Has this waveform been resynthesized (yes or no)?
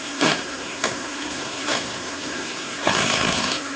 yes